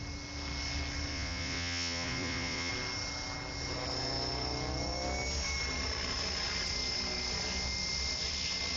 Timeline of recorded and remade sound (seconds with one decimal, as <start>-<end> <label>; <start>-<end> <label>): 0.0-1.1 recorded; 1.1-2.7 remade; 2.7-8.8 recorded

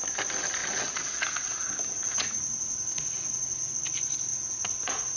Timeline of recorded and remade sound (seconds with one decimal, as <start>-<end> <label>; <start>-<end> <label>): 0.0-0.6 recorded; 0.6-3.7 remade; 3.7-4.3 recorded; 4.3-5.2 remade

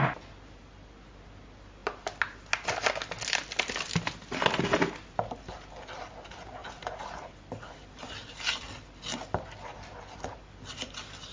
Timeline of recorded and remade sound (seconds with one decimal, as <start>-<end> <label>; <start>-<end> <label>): 0.0-11.3 recorded

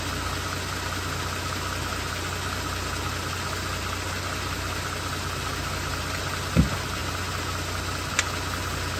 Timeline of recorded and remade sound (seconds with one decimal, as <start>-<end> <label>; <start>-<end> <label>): 0.0-9.0 recorded